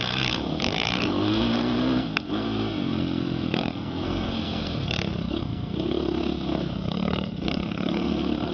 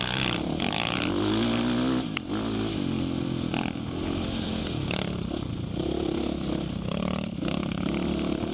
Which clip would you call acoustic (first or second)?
second